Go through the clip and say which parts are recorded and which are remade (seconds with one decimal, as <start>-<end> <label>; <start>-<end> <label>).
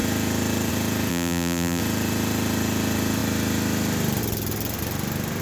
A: 0.0-1.1 recorded; 1.1-1.8 remade; 1.8-5.4 recorded